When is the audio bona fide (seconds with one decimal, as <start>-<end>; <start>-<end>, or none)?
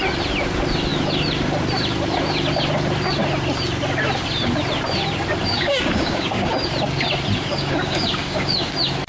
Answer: 0.0-5.5; 6.5-7.5; 8.7-9.1